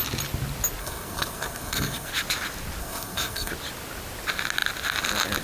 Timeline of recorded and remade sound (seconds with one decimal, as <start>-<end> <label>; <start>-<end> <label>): 0.0-0.8 recorded; 0.8-2.1 remade; 2.1-2.8 recorded; 2.8-3.5 remade; 3.5-5.4 recorded